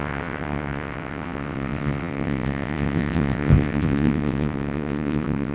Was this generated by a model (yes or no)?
yes